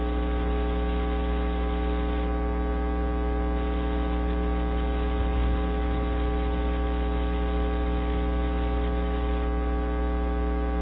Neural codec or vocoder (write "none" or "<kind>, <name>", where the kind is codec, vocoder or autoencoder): none